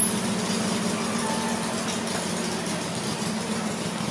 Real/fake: real